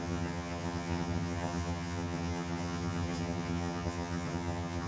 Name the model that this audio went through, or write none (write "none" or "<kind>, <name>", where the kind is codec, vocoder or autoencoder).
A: vocoder, HiFi-GAN